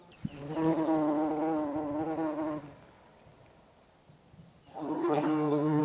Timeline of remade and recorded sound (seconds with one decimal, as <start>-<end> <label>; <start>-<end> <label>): 0.0-4.7 recorded; 4.7-5.8 remade